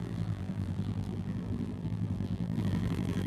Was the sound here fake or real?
fake